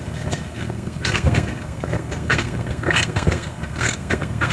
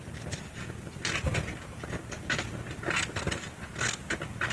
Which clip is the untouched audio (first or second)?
second